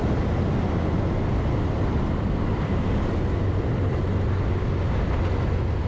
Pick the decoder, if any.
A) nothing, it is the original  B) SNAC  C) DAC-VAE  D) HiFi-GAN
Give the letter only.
A